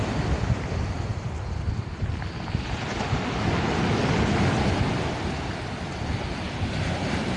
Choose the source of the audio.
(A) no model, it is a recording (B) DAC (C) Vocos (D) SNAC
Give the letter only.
A